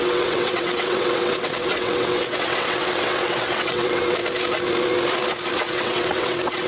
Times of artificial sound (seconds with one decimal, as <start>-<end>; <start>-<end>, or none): 0.0-4.2; 5.7-6.7